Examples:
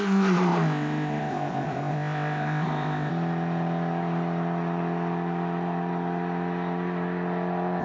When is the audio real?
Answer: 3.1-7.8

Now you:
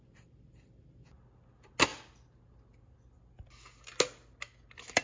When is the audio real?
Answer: 0.0-5.0